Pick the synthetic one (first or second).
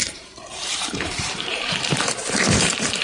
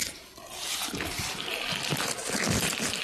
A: first